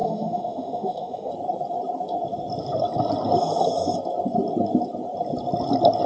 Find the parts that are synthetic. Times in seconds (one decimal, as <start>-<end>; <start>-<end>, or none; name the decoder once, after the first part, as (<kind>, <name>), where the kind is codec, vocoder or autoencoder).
0.0-1.3 (autoencoder, DAC-VAE)